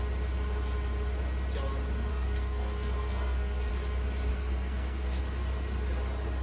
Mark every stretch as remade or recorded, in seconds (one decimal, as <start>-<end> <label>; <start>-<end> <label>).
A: 0.0-2.1 recorded; 2.1-3.7 remade; 3.7-4.3 recorded; 4.3-5.2 remade; 5.2-6.4 recorded